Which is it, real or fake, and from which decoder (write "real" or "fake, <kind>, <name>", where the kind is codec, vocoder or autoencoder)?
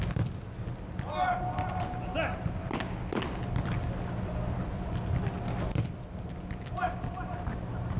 real